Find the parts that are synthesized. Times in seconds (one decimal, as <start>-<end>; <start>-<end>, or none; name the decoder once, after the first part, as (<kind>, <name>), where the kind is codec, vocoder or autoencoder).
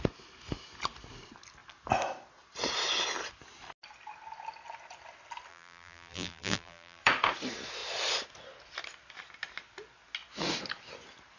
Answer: 5.5-7.0 (vocoder, BigVGAN v2)